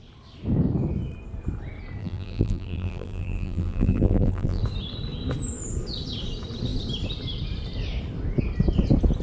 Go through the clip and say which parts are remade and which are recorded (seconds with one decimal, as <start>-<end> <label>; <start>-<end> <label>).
0.0-2.0 recorded; 2.0-4.6 remade; 4.6-9.2 recorded